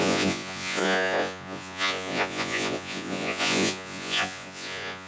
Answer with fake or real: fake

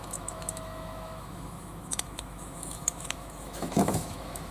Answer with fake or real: fake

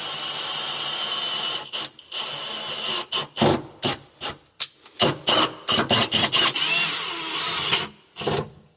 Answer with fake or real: real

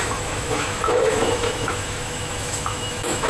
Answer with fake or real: fake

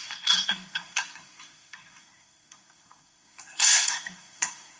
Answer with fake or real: fake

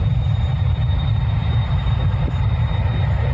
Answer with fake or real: real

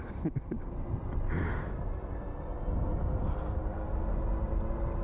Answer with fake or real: real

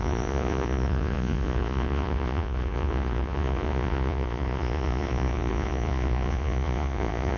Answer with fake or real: fake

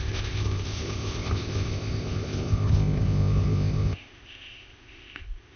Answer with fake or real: fake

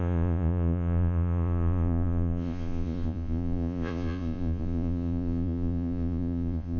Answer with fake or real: fake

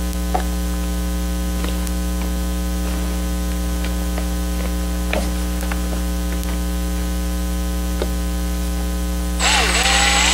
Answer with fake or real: real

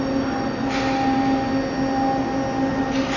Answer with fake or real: real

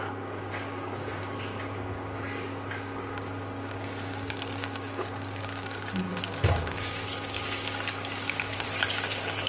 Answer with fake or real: fake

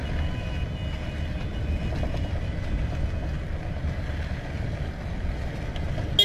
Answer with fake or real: real